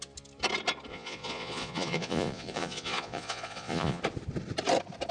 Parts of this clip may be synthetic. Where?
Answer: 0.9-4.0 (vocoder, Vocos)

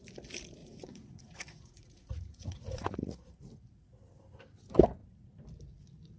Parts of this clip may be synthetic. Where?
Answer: 0.6-3.4 (vocoder, Vocos)

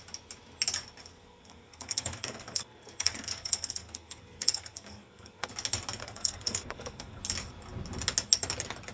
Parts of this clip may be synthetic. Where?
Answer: 1.1-5.5 (codec, SNAC); 6.0-7.2